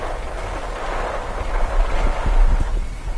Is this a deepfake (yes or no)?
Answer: no